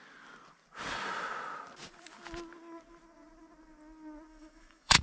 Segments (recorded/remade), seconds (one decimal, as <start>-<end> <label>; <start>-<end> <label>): 0.0-4.3 recorded; 4.3-5.0 remade